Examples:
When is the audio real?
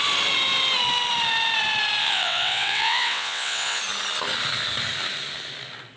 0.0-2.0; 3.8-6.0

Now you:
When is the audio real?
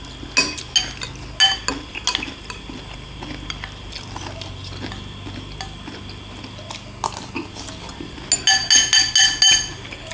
0.0-10.1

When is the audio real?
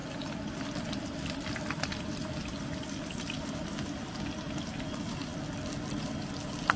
0.0-6.8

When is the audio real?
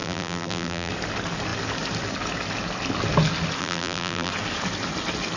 0.9-3.6; 4.3-5.4